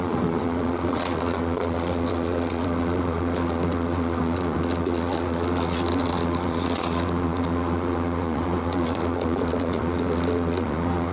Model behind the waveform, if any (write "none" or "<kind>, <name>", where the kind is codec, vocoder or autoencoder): vocoder, Vocos